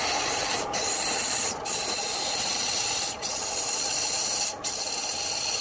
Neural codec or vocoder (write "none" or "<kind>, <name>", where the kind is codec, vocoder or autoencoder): none